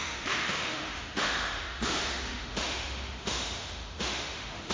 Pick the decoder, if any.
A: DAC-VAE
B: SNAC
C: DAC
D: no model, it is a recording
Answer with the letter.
A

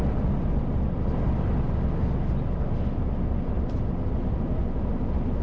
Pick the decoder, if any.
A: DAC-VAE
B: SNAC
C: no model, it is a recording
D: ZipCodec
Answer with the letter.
C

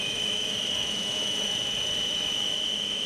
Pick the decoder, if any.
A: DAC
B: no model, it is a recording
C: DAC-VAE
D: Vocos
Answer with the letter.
C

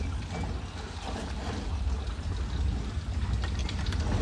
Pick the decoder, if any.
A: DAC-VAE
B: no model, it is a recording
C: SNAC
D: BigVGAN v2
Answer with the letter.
B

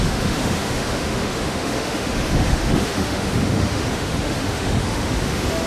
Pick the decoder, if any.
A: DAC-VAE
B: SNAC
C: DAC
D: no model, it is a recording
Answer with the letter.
A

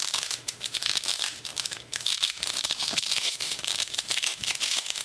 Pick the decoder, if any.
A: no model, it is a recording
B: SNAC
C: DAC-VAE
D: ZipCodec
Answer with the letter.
C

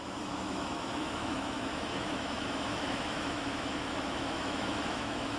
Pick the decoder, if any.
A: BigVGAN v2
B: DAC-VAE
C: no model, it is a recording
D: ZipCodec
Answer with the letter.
B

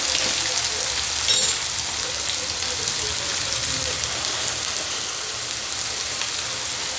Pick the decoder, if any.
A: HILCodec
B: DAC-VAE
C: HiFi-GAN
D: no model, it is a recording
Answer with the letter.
D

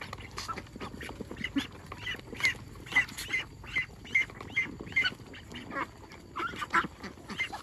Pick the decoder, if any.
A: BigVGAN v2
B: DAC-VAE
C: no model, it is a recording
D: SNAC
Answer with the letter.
C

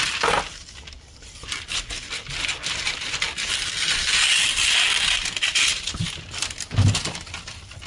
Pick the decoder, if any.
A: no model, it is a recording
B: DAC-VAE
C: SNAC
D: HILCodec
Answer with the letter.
A